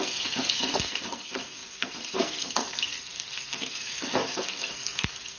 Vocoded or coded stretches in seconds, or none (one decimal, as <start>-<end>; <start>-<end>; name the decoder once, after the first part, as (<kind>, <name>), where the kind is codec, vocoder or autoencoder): 0.0-5.4 (codec, SNAC)